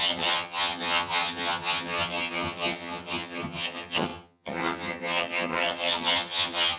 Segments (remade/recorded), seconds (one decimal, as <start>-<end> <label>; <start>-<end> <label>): 0.0-6.8 remade